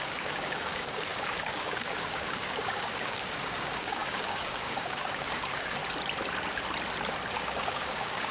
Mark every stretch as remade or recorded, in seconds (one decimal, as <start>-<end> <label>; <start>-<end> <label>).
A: 0.0-5.8 remade; 5.8-7.3 recorded; 7.3-8.3 remade